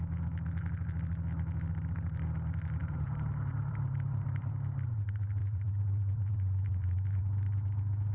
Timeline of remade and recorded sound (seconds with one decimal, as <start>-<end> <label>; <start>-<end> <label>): 0.0-2.8 recorded; 2.8-4.5 remade; 4.5-5.4 recorded; 5.4-7.2 remade; 7.2-8.1 recorded